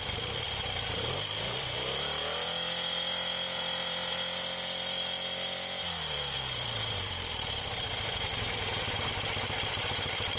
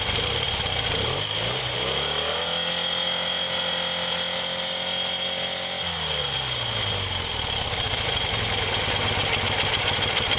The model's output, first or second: first